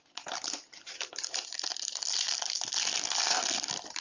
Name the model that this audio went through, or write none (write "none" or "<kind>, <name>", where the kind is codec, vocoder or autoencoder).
none